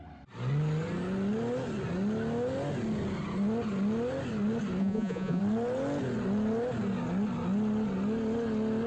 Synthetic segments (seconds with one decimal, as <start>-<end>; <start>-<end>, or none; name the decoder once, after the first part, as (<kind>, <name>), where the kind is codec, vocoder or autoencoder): 4.8-5.4 (vocoder, Vocos)